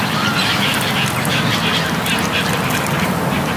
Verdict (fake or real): real